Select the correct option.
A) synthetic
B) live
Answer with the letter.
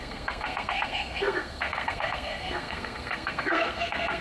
A